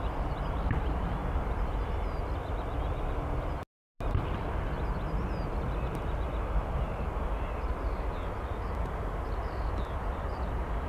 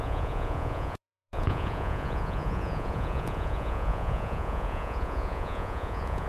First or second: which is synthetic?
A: second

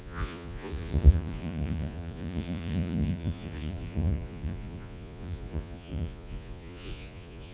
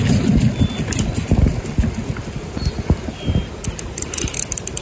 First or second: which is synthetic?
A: first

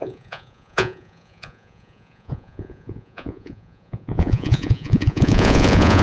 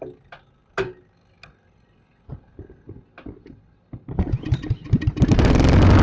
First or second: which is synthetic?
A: first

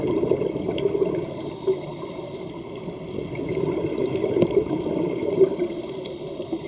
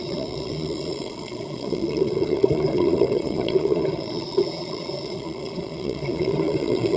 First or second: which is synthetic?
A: second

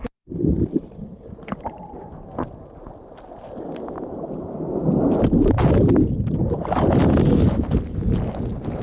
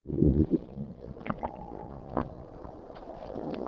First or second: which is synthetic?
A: second